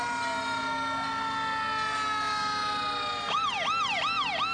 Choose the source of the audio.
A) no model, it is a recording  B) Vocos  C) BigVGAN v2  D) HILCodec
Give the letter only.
A